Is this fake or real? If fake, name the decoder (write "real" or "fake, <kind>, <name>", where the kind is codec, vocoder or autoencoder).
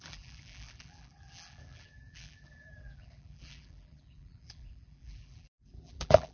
fake, vocoder, BigVGAN v2